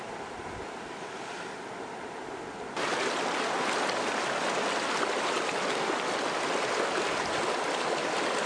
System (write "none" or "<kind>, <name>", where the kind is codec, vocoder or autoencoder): none